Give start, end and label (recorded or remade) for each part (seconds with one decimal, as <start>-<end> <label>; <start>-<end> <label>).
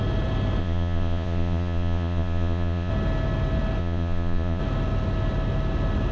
0.0-0.6 recorded; 0.6-2.9 remade; 2.9-3.8 recorded; 3.8-4.6 remade; 4.6-6.1 recorded